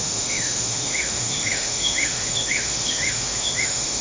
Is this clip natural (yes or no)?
no